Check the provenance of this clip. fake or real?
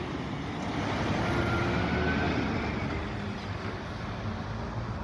real